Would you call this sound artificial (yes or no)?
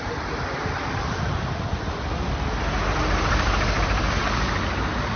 no